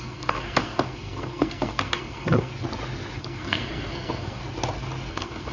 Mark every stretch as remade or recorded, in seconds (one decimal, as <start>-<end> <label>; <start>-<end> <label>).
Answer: 0.0-2.5 remade; 2.5-3.2 recorded; 3.2-4.4 remade; 4.4-5.1 recorded; 5.1-5.5 remade